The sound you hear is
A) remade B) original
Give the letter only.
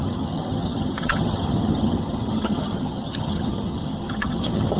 A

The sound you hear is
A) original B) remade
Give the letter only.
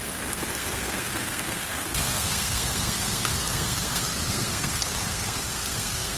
B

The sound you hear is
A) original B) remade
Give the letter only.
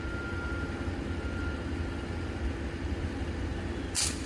A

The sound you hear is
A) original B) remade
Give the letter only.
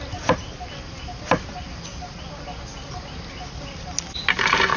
A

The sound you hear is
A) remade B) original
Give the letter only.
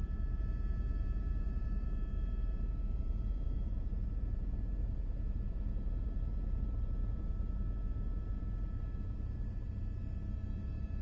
A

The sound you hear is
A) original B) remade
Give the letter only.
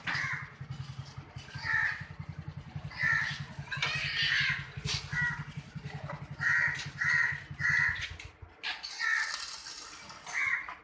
A